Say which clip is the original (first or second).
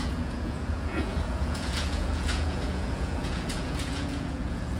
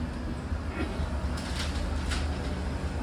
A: second